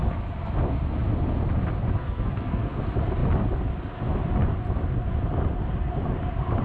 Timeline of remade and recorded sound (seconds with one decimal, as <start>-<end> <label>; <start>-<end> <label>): 0.0-2.0 recorded; 2.0-2.8 remade; 2.8-6.6 recorded